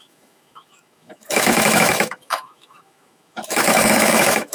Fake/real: fake